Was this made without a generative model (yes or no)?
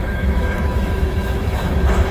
no